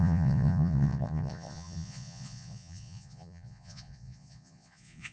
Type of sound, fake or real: fake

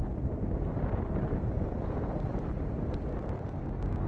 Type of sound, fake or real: real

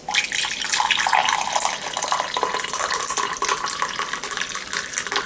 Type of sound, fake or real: real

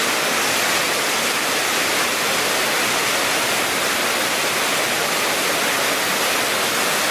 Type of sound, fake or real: real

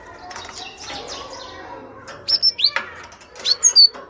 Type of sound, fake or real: real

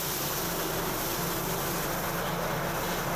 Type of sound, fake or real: real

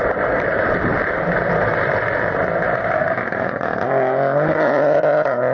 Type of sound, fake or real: real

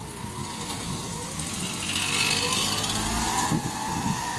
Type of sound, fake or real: real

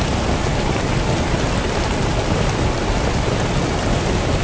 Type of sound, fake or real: real